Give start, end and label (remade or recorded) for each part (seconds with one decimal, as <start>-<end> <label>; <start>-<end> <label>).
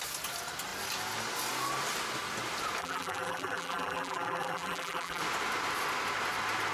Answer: 0.0-2.8 recorded; 2.8-5.2 remade; 5.2-6.7 recorded